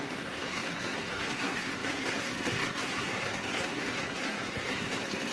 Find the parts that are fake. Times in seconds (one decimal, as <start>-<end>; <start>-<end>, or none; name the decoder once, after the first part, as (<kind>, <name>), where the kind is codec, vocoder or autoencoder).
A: 0.0-5.3 (codec, SNAC)